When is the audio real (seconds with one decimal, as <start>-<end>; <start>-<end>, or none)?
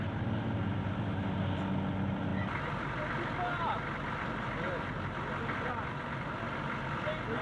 0.0-7.4